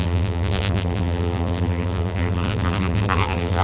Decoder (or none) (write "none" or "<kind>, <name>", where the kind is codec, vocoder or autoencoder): vocoder, BigVGAN v2